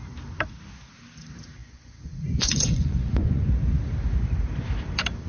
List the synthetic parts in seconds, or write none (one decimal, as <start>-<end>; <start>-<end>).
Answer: 1.6-3.5